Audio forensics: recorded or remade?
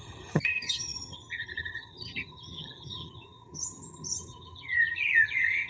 remade